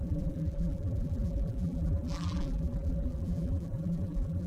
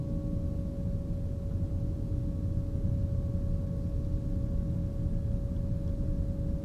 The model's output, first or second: first